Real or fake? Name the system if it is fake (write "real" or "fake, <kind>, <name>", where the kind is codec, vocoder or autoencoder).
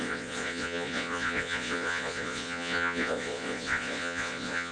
fake, vocoder, Vocos